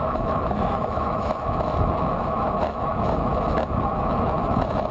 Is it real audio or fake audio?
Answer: fake